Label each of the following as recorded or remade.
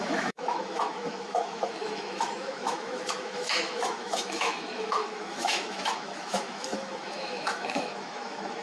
remade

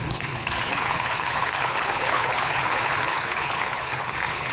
remade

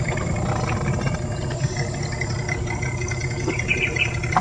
recorded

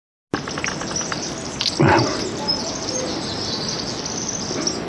recorded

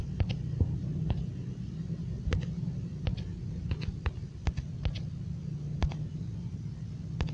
recorded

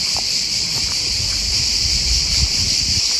remade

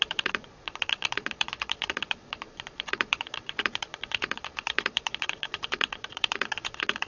remade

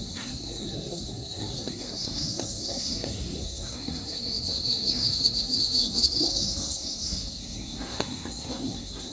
remade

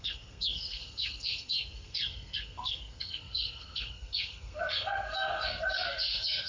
remade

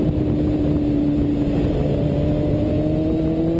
recorded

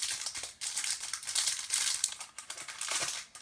remade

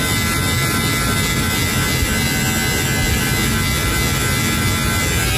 recorded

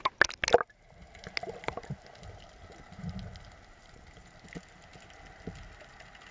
recorded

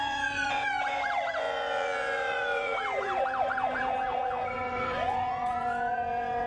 remade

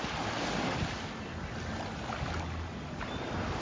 recorded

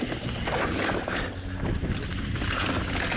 recorded